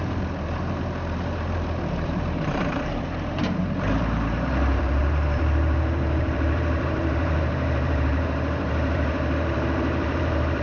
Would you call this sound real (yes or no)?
no